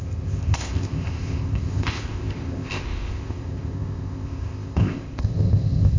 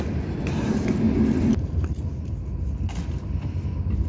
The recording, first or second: second